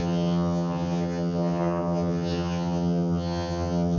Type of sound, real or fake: fake